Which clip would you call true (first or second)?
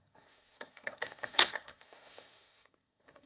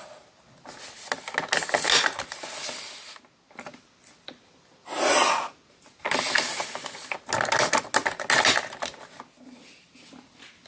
second